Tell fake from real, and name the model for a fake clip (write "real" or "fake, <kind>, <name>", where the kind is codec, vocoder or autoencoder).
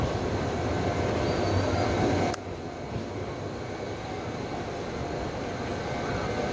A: real